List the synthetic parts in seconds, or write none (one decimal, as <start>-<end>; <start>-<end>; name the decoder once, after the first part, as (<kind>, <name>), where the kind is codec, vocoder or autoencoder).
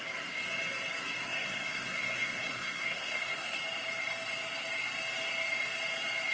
1.2-3.6 (codec, SNAC)